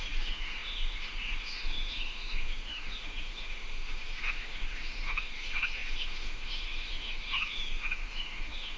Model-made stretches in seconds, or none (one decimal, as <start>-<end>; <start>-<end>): 0.0-8.8